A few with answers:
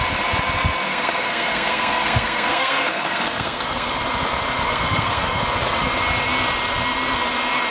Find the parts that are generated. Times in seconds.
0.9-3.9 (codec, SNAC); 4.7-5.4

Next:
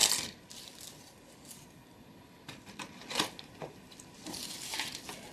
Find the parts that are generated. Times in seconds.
none

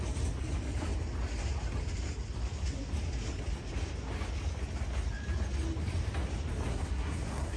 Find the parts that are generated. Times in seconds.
6.7-7.6 (codec, SNAC)

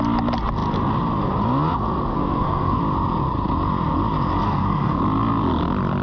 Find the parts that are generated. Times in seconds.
2.1-2.8 (codec, SNAC); 4.4-5.0

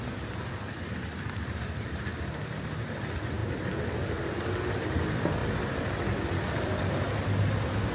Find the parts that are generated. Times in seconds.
none